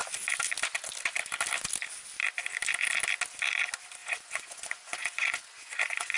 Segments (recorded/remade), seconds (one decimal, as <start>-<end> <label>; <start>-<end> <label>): 0.0-4.0 recorded; 4.0-6.2 remade